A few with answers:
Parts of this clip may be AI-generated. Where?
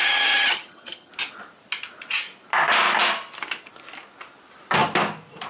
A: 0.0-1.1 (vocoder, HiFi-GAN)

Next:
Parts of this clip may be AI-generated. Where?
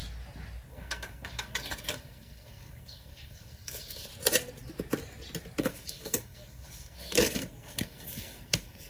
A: 0.7-4.1 (codec, SNAC); 5.6-8.9